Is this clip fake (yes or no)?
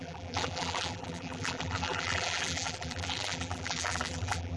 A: yes